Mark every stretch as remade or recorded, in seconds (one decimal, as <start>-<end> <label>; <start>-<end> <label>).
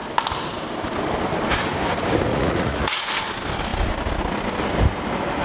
0.0-2.3 recorded; 2.3-3.1 remade; 3.1-5.4 recorded